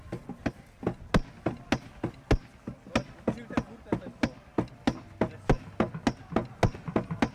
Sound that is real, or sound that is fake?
real